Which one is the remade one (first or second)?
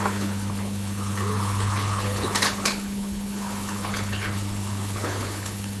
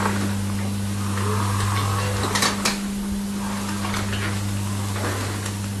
first